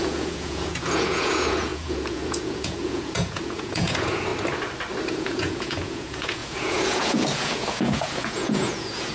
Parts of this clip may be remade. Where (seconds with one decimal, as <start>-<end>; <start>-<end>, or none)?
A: 0.0-4.3; 5.1-9.1